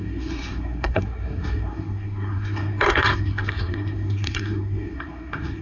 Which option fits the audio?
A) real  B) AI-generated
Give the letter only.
B